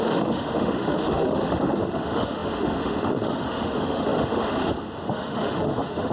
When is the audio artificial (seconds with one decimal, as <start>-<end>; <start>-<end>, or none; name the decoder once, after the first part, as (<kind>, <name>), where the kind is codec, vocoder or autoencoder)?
0.0-6.1 (autoencoder, DAC-VAE)